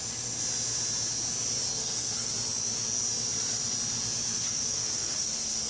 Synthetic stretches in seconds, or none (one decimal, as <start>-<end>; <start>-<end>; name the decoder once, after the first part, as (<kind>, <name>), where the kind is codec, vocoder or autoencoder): 1.7-2.3 (codec, SNAC); 4.3-5.7